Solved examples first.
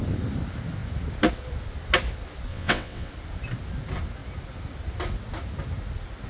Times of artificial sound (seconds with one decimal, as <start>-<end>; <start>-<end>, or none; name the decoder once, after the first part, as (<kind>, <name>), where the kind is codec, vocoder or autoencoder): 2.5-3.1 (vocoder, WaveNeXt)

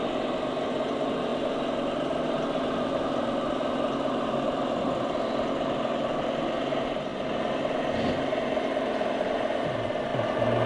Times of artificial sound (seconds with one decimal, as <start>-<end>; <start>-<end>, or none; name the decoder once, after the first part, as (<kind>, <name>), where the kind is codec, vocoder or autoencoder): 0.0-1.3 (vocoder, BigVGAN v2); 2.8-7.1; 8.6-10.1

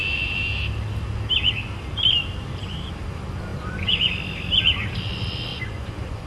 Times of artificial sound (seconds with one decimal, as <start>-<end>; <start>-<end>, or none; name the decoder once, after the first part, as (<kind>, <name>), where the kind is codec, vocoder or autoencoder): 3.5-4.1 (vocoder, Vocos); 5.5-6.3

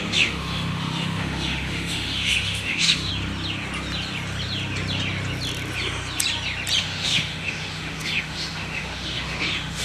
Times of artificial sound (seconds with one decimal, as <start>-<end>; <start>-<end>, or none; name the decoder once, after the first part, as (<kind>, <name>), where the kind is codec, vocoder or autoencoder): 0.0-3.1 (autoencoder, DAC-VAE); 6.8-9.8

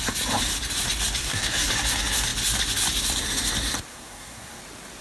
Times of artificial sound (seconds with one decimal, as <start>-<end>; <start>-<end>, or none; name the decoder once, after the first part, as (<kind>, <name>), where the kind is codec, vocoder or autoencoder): 1.2-1.7 (codec, SNAC); 3.9-4.6

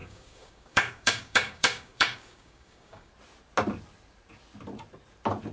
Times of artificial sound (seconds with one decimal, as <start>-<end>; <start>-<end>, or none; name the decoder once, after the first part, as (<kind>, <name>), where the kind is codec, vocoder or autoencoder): 0.0-3.1 (codec, DAC)